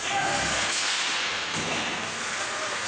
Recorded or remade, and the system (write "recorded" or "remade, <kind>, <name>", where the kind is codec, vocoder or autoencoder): remade, codec, SNAC